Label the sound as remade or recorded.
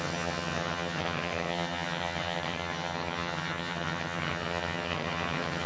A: remade